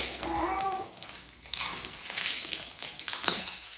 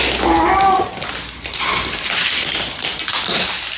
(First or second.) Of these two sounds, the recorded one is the second